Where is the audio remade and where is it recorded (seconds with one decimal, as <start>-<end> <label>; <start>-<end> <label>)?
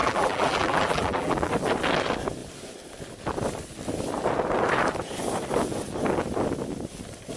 0.0-1.5 remade; 1.5-7.4 recorded